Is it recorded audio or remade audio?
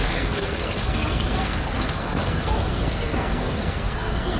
remade